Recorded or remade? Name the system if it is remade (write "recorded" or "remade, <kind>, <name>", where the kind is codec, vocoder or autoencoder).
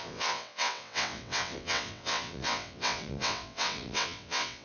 remade, vocoder, WaveNeXt